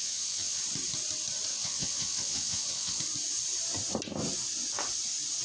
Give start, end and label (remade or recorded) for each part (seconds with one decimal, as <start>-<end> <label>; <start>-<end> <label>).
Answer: 0.0-0.6 remade; 0.6-1.5 recorded; 1.5-3.0 remade; 3.0-5.4 recorded